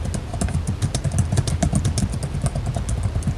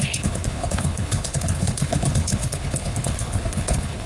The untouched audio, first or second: first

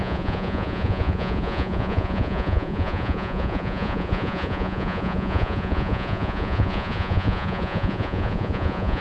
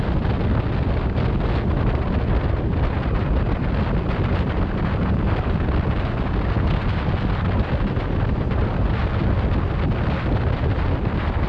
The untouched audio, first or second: second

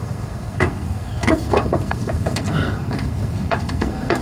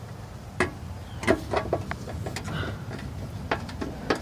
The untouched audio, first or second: second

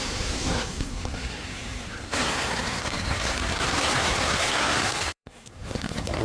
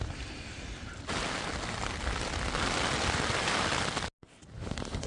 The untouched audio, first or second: second